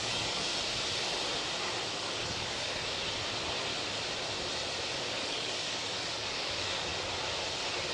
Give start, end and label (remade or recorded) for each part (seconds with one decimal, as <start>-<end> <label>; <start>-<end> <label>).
0.0-0.5 remade; 0.5-1.9 recorded; 1.9-3.0 remade; 3.0-5.1 recorded; 5.1-6.9 remade; 6.9-7.9 recorded